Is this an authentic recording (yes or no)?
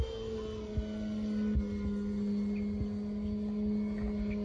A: yes